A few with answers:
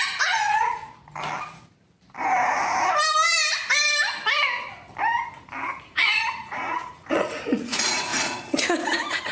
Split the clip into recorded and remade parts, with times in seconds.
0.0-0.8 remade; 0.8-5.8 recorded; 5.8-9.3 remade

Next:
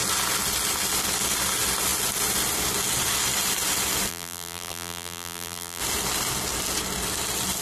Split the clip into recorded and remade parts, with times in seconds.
0.0-4.1 recorded; 4.1-5.8 remade; 5.8-7.6 recorded

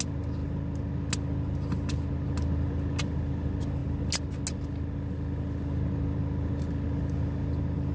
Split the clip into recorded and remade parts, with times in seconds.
0.0-7.9 recorded

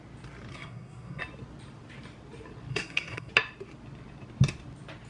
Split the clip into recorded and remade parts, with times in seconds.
0.0-0.5 recorded; 0.5-1.2 remade; 1.2-2.7 recorded; 2.7-3.3 remade; 3.3-5.1 recorded

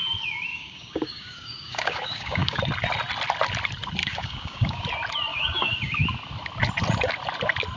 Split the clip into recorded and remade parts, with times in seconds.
0.0-0.5 recorded; 0.5-2.6 remade; 2.6-4.0 recorded; 4.0-4.8 remade; 4.8-5.3 recorded; 5.3-6.0 remade; 6.0-7.8 recorded

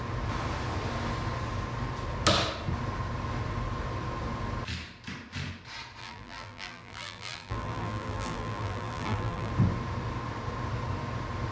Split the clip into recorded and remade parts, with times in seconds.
0.0-6.0 recorded; 6.0-9.5 remade; 9.5-11.5 recorded